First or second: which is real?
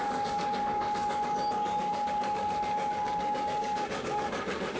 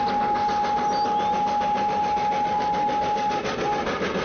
second